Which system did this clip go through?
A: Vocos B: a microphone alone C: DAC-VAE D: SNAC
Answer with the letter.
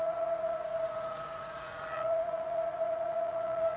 A